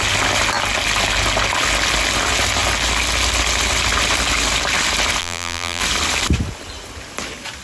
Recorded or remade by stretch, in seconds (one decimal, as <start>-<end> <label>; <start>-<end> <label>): 0.0-5.2 recorded; 5.2-5.8 remade; 5.8-7.6 recorded